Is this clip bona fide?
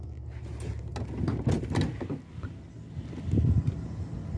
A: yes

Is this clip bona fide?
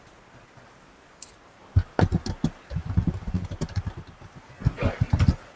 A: yes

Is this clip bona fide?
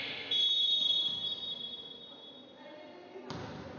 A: yes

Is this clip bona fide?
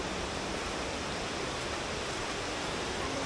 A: yes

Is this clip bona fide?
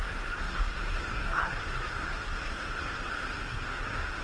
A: no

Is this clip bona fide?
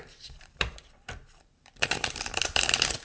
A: no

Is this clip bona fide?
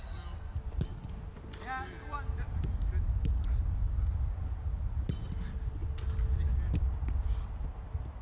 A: yes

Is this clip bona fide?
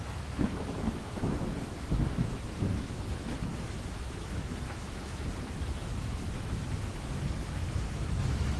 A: no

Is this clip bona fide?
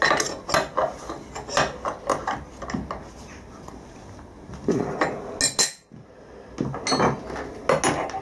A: yes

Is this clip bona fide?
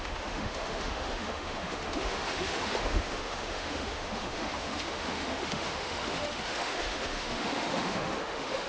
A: no